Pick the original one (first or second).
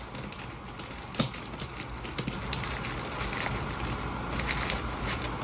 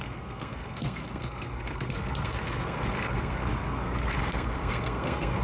first